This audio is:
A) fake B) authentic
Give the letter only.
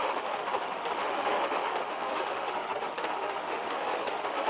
A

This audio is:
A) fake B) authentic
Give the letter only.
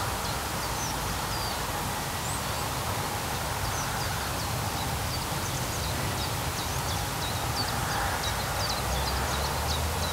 B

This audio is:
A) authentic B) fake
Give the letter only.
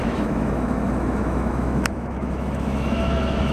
B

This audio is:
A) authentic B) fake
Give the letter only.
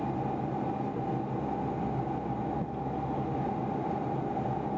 A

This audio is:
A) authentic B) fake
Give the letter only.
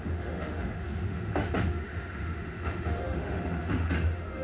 B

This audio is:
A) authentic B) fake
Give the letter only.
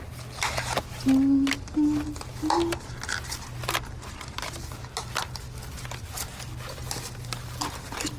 A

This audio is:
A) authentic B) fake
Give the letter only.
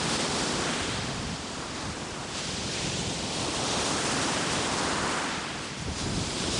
A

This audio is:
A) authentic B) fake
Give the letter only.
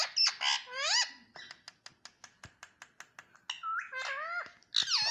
A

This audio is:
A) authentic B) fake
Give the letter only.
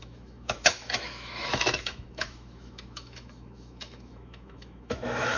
B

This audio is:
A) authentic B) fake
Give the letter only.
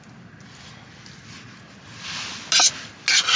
A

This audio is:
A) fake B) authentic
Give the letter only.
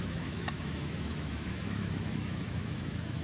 A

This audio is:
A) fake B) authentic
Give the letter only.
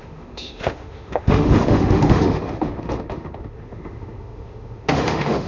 A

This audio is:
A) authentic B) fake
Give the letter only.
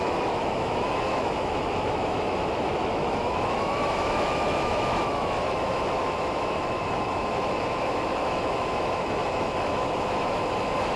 B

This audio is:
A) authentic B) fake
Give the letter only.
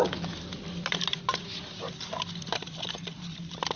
A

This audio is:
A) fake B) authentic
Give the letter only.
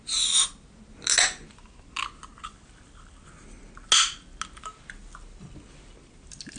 B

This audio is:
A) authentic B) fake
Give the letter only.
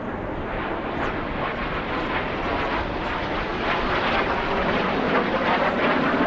A